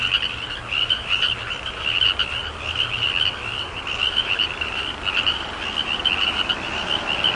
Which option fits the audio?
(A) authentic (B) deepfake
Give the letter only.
A